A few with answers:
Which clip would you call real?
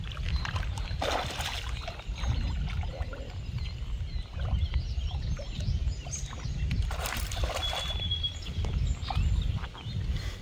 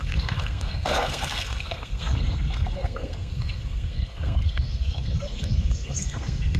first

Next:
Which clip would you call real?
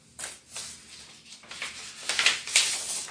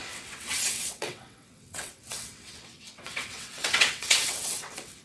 first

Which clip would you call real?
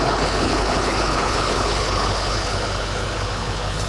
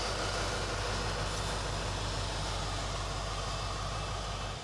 second